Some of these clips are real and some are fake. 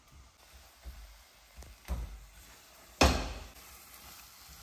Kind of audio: real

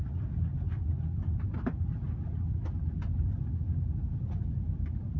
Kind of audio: real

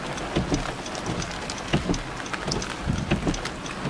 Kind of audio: real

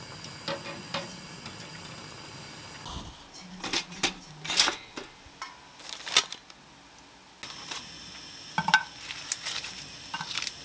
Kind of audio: real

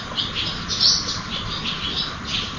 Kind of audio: real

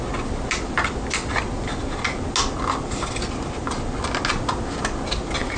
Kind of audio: real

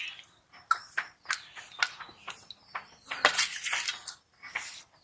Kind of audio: real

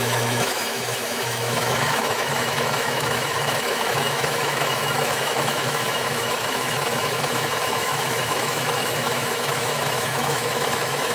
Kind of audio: fake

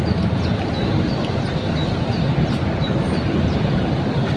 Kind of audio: real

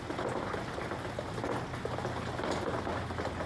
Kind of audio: real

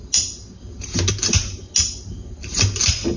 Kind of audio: real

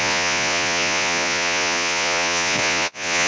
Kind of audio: fake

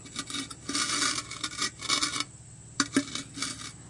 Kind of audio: real